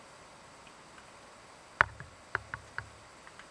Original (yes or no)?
yes